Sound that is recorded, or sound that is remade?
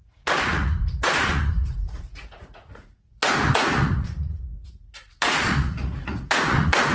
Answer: remade